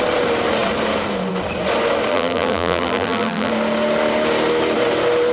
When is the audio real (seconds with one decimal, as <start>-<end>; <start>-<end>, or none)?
0.0-2.1; 3.5-5.3

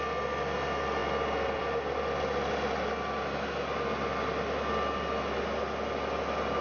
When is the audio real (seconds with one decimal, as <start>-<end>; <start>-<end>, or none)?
0.0-6.6

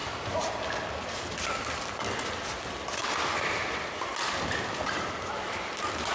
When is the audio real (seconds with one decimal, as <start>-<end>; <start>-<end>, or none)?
0.0-6.1

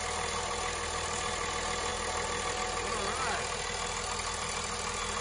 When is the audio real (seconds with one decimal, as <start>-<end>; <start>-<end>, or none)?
0.0-5.2